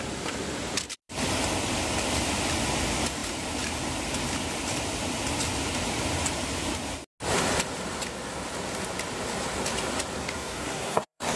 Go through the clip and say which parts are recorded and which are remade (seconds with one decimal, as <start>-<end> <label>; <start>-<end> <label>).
0.0-10.2 recorded; 10.2-11.4 remade